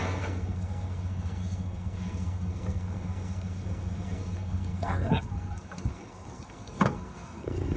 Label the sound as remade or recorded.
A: remade